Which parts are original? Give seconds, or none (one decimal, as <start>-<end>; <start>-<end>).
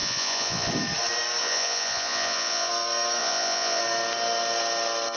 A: 0.7-1.4; 2.7-3.2; 3.8-5.2